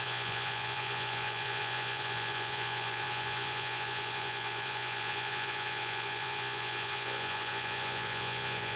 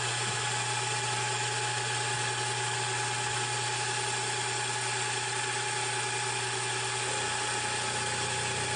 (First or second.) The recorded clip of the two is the second